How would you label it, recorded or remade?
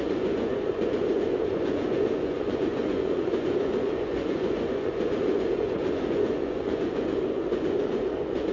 remade